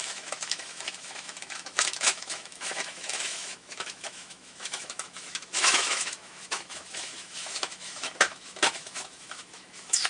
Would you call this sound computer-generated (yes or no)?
yes